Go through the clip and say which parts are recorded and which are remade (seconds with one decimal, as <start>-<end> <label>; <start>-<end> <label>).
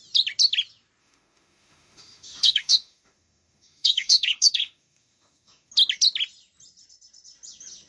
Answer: 0.0-1.0 recorded; 1.0-5.7 remade; 5.7-7.9 recorded